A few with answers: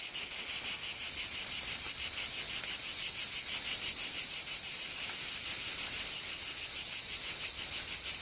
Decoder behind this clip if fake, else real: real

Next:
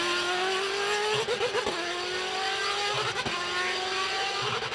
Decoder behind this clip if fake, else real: real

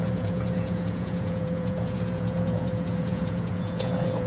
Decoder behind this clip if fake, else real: fake, vocoder, Vocos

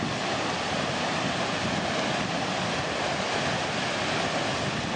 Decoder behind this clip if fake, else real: real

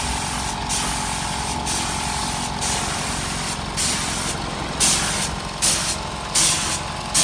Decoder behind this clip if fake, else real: real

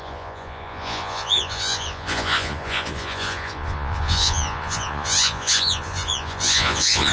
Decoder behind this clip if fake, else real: fake, vocoder, Vocos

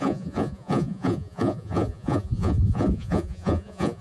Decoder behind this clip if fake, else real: fake, vocoder, Vocos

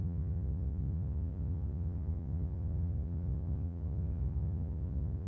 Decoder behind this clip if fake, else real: fake, vocoder, Vocos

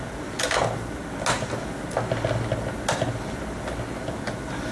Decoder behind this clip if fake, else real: real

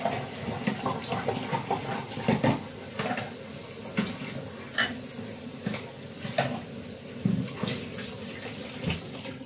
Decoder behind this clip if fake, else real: real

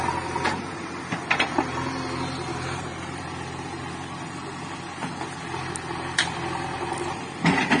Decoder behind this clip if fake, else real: real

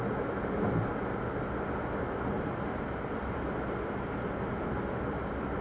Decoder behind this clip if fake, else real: real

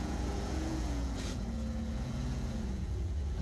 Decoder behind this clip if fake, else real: fake, vocoder, Vocos